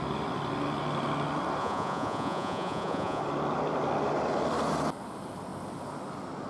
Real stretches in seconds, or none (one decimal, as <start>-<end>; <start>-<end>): 0.0-1.6; 3.2-6.5